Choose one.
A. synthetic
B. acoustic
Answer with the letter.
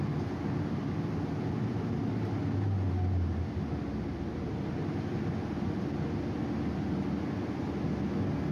B